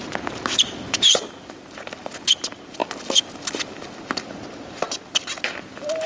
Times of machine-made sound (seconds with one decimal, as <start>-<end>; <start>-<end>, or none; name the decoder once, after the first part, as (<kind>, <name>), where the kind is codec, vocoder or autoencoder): none